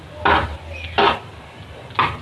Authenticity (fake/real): real